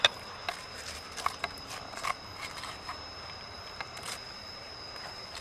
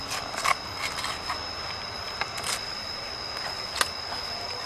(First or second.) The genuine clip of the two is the second